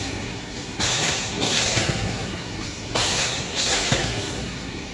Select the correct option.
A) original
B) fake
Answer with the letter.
B